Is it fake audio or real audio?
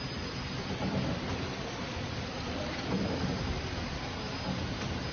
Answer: fake